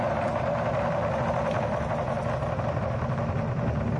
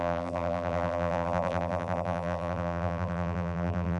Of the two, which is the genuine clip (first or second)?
first